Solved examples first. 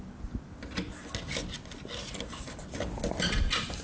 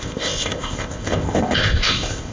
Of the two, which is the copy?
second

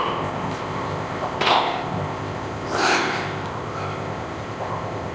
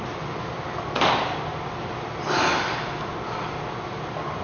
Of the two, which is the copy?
first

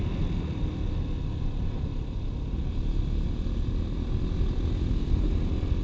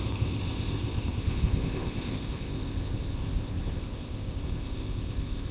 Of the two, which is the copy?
second